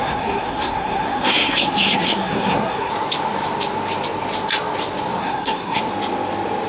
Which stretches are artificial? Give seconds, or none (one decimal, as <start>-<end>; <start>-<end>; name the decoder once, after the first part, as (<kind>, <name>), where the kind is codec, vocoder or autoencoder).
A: 0.0-2.9 (codec, SNAC); 5.2-5.8